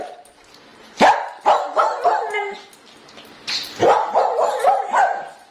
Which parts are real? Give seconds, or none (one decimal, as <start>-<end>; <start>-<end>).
0.0-5.5